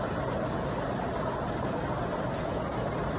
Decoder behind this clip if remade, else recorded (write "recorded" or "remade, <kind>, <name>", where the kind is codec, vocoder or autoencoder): recorded